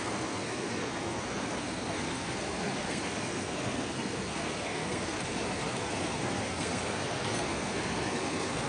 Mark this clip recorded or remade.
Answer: remade